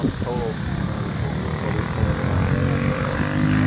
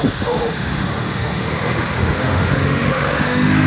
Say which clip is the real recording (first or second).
first